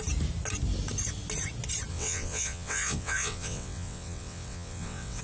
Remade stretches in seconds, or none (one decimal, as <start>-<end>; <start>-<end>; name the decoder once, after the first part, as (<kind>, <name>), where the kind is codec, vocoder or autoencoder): 1.9-5.2 (vocoder, WaveNeXt)